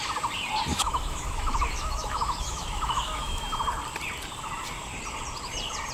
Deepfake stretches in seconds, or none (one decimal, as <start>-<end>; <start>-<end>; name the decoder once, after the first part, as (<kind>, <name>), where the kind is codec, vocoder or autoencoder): 0.7-3.4 (autoencoder, DAC-VAE)